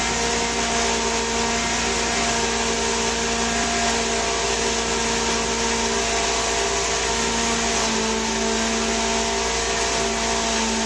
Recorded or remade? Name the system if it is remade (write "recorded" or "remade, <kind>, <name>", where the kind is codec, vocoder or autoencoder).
recorded